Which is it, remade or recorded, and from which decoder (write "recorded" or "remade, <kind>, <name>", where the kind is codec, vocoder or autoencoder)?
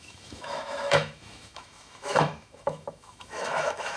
remade, autoencoder, DAC-VAE